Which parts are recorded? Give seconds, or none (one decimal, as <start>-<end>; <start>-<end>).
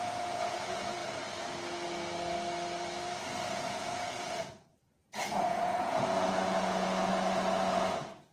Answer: 1.0-3.5; 7.1-7.7